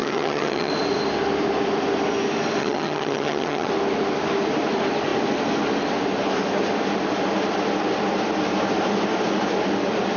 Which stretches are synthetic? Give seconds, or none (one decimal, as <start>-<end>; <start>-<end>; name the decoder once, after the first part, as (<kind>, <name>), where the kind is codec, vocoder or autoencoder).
0.0-0.7 (vocoder, HiFi-GAN); 2.6-3.7

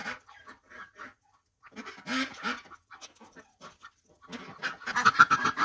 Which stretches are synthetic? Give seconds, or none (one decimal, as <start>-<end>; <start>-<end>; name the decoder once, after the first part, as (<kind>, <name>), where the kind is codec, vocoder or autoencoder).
none